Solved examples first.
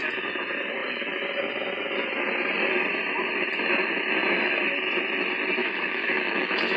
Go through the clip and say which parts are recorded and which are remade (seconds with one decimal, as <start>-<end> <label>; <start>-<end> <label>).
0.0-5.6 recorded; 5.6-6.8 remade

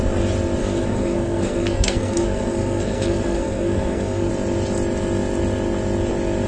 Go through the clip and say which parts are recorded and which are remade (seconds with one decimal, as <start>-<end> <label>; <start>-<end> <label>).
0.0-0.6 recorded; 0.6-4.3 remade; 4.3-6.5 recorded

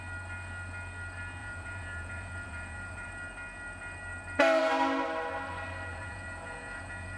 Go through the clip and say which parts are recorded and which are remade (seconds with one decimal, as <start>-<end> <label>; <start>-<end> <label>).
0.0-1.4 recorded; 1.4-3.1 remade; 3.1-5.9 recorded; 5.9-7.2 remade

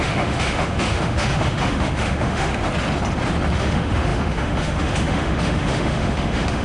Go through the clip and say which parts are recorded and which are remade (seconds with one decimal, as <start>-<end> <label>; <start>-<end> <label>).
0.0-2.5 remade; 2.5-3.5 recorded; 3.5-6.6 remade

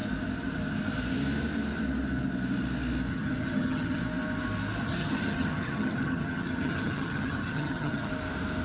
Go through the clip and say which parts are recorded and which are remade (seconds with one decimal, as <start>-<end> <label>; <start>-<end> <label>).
0.0-3.1 recorded; 3.1-4.0 remade; 4.0-4.8 recorded; 4.8-8.1 remade; 8.1-8.6 recorded

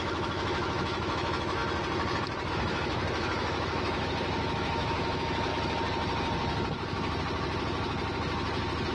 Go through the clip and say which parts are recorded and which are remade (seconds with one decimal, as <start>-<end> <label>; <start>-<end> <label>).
0.0-1.6 remade; 1.6-2.5 recorded; 2.5-5.5 remade; 5.5-8.9 recorded